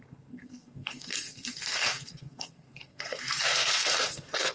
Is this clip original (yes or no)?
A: no